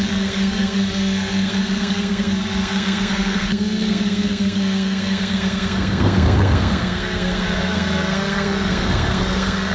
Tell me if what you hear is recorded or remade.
remade